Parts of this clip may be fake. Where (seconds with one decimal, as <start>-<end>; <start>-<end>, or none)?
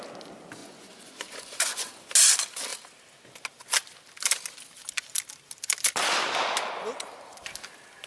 0.6-2.1